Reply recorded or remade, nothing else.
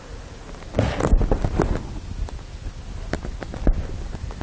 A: recorded